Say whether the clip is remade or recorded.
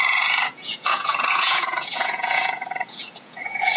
remade